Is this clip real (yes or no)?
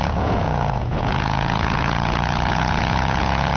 no